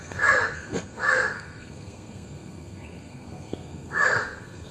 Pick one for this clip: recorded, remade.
remade